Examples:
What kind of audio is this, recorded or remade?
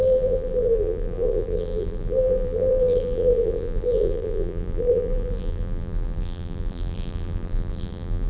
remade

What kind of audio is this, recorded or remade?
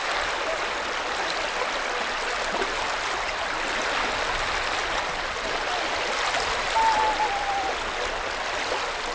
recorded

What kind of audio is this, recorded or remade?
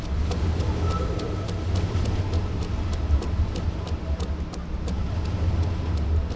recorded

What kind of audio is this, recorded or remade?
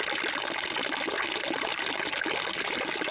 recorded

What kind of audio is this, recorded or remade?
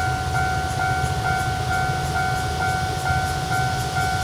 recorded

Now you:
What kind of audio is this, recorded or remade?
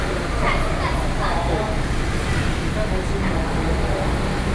recorded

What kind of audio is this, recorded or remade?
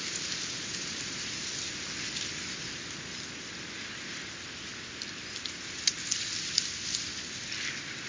recorded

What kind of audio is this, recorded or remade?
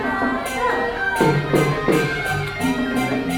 recorded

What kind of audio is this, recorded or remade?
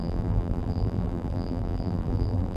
remade